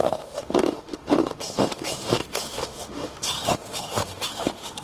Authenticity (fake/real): fake